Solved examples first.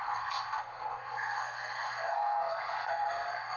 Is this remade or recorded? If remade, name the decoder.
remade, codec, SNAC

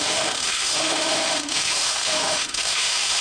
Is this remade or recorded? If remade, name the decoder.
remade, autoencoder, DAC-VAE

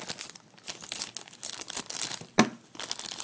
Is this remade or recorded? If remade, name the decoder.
recorded